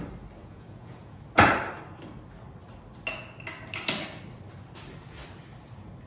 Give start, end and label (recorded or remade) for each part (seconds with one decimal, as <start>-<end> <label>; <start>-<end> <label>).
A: 0.0-0.4 recorded; 0.4-1.2 remade; 1.2-6.1 recorded